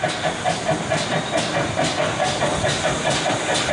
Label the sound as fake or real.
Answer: real